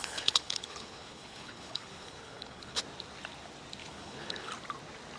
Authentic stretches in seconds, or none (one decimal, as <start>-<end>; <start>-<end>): 2.8-3.8; 4.5-5.2